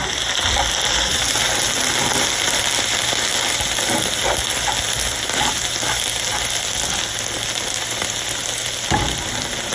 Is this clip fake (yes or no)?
no